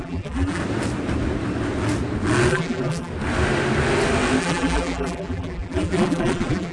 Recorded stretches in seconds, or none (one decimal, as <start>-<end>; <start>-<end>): 0.6-2.5; 3.1-4.4